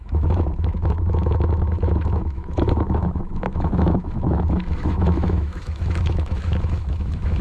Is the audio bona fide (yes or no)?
no